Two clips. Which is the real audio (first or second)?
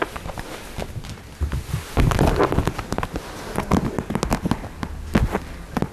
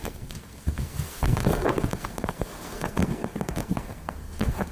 first